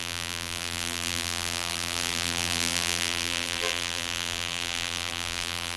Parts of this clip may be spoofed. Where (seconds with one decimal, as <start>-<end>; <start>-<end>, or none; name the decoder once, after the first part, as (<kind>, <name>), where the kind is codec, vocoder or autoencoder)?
0.0-5.8 (vocoder, BigVGAN v2)